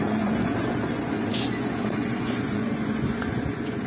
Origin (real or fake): fake